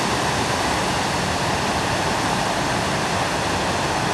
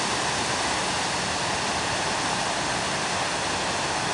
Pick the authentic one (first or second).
second